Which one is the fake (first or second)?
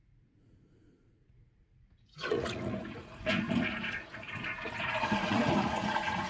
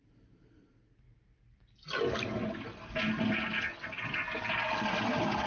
first